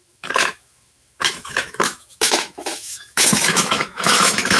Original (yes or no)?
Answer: no